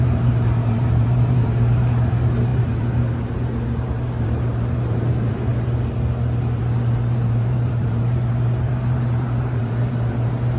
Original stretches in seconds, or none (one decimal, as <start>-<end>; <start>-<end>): 5.5-6.4